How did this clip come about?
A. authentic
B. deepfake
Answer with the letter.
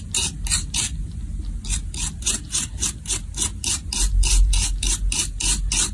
A